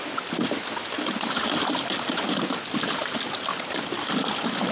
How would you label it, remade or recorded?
recorded